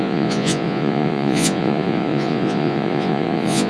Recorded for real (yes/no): no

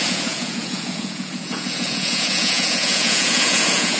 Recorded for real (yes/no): no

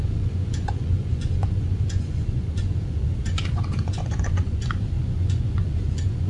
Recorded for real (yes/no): no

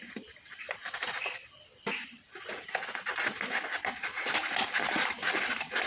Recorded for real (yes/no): yes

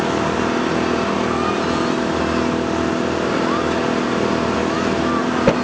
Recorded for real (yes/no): yes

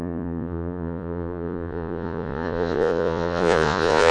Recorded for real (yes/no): no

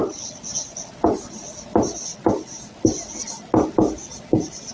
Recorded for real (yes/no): yes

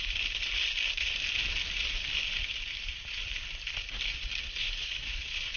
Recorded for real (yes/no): yes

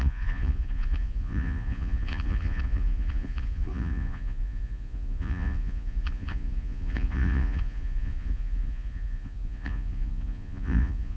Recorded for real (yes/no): no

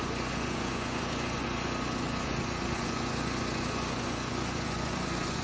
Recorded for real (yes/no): no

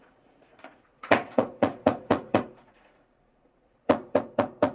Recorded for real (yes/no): no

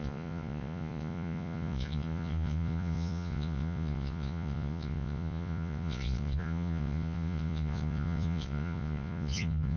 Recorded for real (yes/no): no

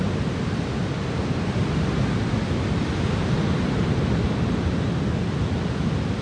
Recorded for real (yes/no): yes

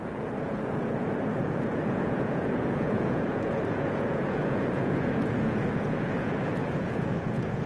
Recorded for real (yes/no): no